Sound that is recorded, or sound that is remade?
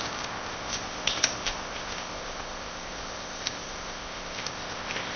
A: remade